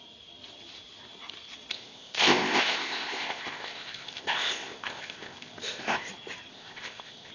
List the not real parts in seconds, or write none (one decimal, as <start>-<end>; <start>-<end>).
1.7-6.1; 6.5-7.3